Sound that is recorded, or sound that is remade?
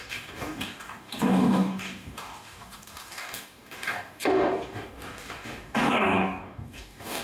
remade